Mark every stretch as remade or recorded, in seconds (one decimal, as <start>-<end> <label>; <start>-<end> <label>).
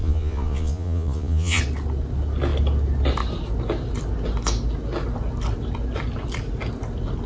0.0-1.6 remade; 1.6-7.3 recorded